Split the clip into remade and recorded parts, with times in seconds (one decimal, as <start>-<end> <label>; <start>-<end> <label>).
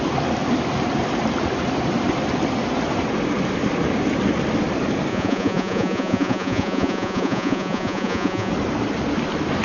0.0-5.1 recorded; 5.1-8.5 remade; 8.5-9.6 recorded